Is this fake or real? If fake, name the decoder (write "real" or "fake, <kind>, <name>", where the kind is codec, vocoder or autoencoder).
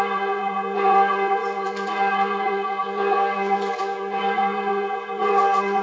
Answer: fake, vocoder, Vocos